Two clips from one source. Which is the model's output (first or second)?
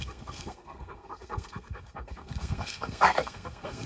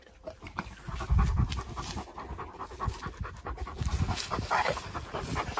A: first